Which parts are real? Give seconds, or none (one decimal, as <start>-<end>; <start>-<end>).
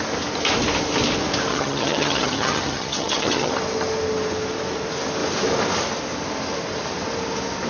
0.0-1.5; 3.5-7.7